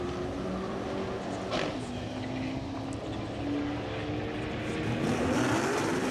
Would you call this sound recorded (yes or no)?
yes